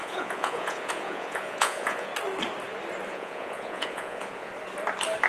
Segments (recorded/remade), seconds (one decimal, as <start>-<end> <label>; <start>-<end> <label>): 0.0-2.1 remade; 2.1-3.1 recorded; 3.1-4.5 remade; 4.5-5.3 recorded